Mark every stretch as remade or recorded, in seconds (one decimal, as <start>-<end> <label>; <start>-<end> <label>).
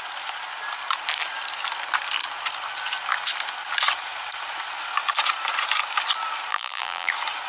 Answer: 0.0-6.5 recorded; 6.5-7.1 remade; 7.1-7.5 recorded